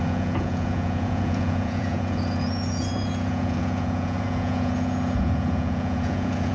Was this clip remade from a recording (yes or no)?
yes